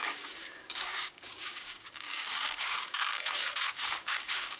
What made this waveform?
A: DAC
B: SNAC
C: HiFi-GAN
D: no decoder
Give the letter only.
A